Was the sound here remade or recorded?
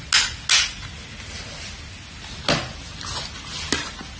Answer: recorded